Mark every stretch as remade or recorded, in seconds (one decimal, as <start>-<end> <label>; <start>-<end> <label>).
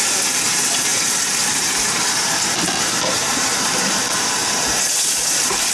0.0-5.7 remade